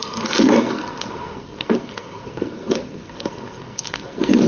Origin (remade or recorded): remade